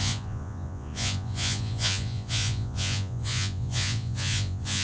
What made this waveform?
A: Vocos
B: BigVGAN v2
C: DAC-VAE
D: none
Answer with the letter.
A